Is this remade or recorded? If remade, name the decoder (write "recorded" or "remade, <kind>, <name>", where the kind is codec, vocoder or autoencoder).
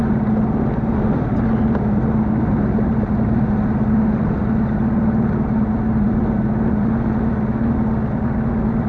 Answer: recorded